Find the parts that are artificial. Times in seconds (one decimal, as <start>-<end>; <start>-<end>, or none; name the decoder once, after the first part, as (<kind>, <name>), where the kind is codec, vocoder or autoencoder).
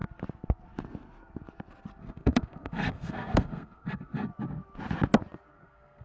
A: 2.0-4.3 (codec, SNAC); 5.5-6.0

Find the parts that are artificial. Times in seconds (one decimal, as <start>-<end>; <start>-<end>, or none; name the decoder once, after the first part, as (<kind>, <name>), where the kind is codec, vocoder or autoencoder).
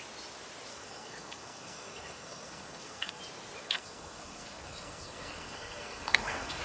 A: 0.7-3.2 (codec, SNAC); 3.6-6.6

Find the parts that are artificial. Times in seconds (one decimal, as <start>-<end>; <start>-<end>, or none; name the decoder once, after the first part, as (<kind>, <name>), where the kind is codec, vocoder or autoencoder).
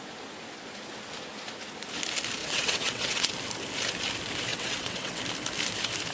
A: 2.4-3.3 (vocoder, WaveNeXt); 4.5-5.2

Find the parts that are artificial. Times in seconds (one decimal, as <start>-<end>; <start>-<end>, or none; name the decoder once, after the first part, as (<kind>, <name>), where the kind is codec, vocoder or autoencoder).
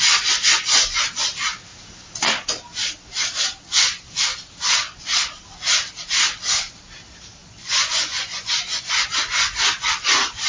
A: 7.4-8.9 (vocoder, Vocos)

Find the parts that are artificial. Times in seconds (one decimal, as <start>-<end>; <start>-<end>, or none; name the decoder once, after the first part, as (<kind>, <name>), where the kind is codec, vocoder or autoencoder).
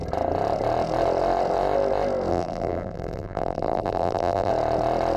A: 2.3-4.5 (vocoder, BigVGAN v2)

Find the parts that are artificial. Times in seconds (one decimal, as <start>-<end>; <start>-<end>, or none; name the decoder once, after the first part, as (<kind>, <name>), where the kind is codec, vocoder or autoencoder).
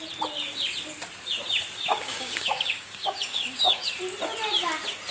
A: 1.9-3.8 (codec, DAC)